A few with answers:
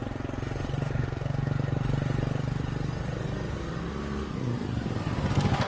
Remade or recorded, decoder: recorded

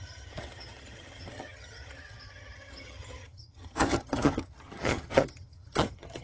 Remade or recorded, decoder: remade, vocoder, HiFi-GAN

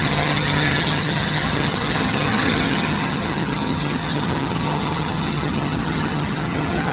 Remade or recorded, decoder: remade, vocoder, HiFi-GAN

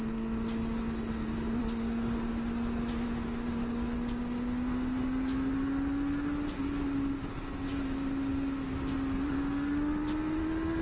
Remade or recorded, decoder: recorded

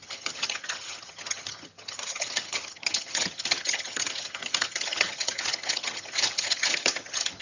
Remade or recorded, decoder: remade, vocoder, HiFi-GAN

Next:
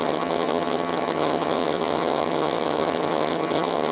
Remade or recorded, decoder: remade, vocoder, HiFi-GAN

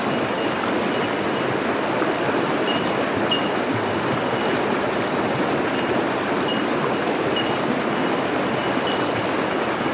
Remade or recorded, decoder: recorded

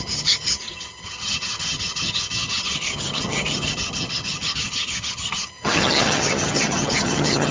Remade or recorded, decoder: remade, vocoder, HiFi-GAN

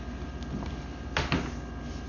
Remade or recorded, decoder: recorded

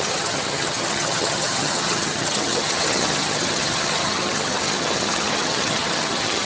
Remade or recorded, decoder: remade, vocoder, HiFi-GAN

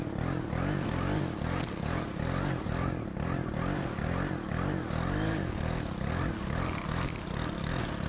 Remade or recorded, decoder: recorded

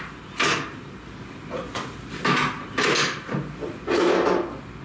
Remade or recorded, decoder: recorded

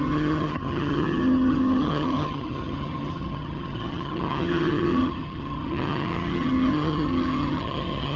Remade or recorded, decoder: remade, vocoder, HiFi-GAN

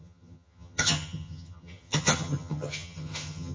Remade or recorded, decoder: remade, vocoder, HiFi-GAN